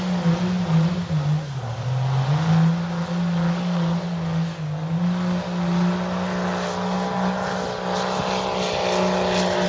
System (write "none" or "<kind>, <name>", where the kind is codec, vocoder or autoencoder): none